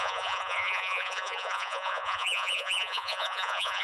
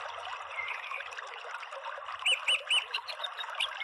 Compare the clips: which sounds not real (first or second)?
first